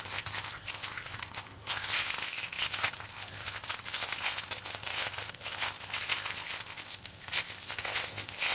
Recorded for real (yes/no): no